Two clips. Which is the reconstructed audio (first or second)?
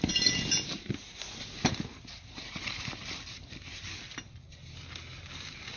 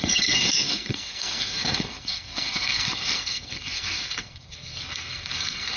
second